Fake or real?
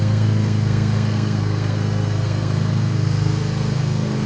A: fake